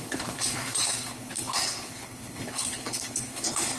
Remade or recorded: remade